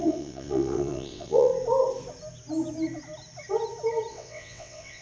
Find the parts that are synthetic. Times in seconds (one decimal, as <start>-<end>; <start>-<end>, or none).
0.0-1.5; 4.1-5.0